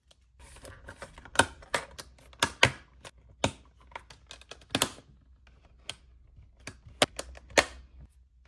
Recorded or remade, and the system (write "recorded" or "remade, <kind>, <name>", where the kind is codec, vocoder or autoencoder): recorded